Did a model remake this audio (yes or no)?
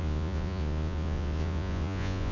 yes